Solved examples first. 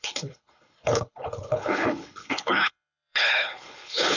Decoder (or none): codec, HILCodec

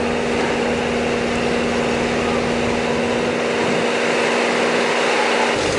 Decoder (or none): none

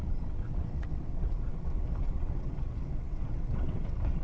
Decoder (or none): vocoder, WaveNeXt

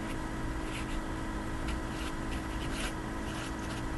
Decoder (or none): none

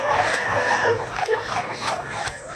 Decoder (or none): codec, DAC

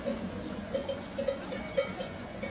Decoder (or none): vocoder, Vocos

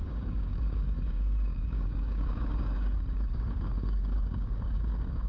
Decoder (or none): codec, DAC